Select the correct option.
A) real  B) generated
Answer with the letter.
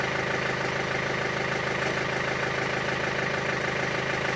A